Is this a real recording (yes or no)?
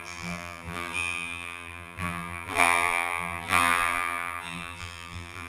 no